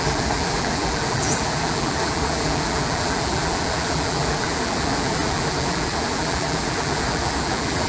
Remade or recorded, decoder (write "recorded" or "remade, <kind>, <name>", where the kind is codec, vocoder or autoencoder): remade, vocoder, BigVGAN v2